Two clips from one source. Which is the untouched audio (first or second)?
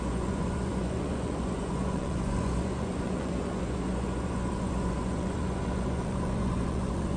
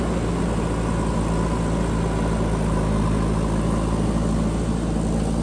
second